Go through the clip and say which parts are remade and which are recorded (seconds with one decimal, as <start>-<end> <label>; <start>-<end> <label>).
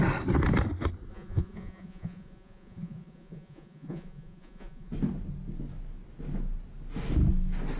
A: 0.0-1.1 recorded; 1.1-4.9 remade; 4.9-7.8 recorded